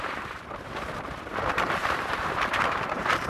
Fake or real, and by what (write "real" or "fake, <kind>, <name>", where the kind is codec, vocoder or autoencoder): fake, vocoder, BigVGAN v2